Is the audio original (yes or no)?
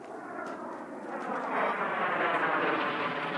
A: yes